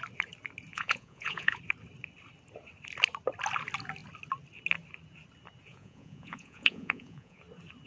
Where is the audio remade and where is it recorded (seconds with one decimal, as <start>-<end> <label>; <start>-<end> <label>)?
0.0-0.7 recorded; 0.7-1.6 remade; 1.6-5.7 recorded; 5.7-7.4 remade; 7.4-7.9 recorded